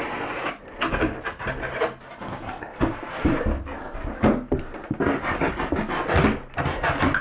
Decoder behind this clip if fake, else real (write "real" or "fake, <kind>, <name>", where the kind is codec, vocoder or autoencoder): real